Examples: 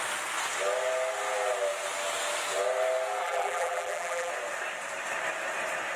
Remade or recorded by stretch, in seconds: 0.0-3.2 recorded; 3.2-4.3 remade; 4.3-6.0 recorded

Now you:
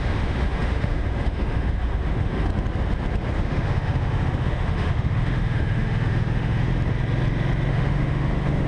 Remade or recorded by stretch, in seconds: 0.0-2.5 remade; 2.5-3.3 recorded; 3.3-6.7 remade; 6.7-7.7 recorded; 7.7-8.7 remade

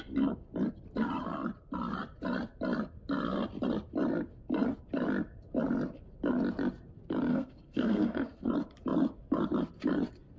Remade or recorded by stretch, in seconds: 0.0-7.3 recorded; 7.3-8.5 remade; 8.5-10.4 recorded

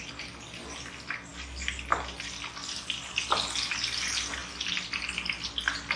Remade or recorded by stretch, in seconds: 0.0-1.3 recorded; 1.3-3.7 remade; 3.7-4.4 recorded; 4.4-5.0 remade; 5.0-6.0 recorded